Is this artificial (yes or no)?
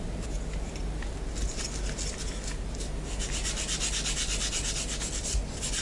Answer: no